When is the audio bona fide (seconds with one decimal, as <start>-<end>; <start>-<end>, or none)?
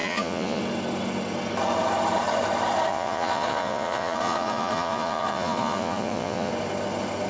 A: 0.6-2.9; 6.5-7.3